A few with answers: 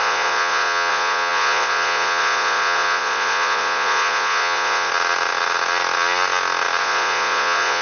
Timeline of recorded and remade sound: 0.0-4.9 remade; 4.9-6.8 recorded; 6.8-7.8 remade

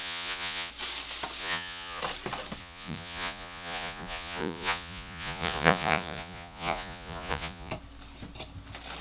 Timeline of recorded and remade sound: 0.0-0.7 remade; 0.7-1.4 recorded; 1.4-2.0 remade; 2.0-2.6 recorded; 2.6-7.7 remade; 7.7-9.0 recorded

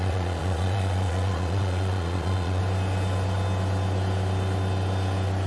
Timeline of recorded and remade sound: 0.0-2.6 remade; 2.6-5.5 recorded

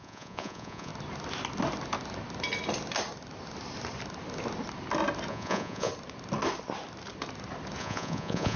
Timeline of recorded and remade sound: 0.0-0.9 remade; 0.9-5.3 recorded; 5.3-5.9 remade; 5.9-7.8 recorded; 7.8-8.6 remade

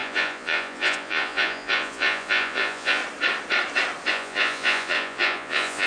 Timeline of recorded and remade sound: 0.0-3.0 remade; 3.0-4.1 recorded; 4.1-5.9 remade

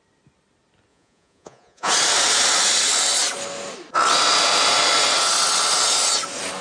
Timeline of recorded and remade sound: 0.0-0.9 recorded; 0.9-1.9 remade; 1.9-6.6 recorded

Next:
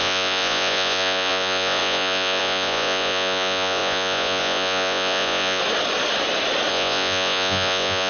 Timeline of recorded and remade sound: 0.0-5.6 remade; 5.6-6.7 recorded; 6.7-8.1 remade